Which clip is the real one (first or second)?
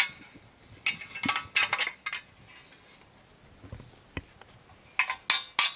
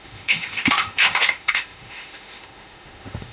first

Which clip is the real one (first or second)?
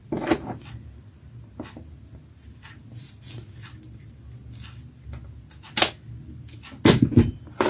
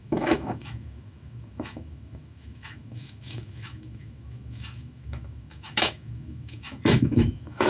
first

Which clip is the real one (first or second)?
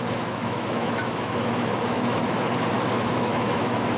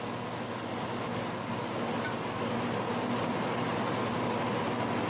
second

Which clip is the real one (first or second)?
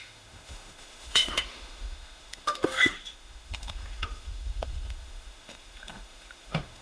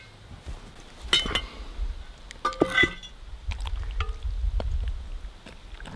second